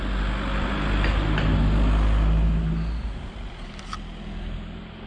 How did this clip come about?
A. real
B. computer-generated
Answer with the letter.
A